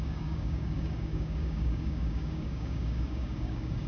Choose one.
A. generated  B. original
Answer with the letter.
A